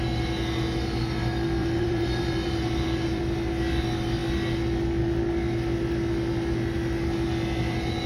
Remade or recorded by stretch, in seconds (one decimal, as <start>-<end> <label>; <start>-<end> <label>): 0.0-1.6 recorded; 1.6-3.2 remade; 3.2-8.1 recorded